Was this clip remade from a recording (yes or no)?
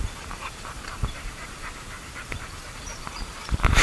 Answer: yes